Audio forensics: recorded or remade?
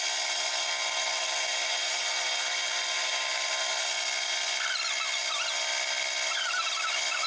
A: recorded